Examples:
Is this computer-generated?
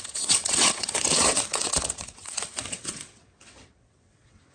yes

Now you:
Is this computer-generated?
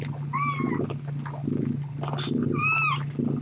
no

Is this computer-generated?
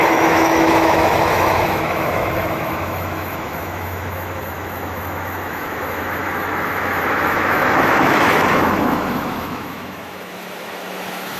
yes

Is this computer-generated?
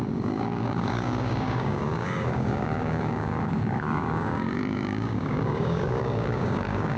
yes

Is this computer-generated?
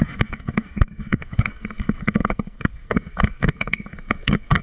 yes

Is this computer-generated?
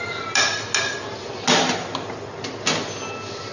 no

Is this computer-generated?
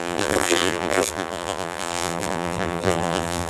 yes